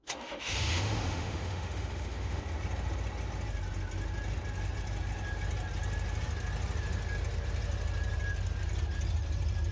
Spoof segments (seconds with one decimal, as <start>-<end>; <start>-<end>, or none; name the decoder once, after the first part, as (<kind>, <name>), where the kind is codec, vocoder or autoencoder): 0.0-2.4 (autoencoder, DAC-VAE)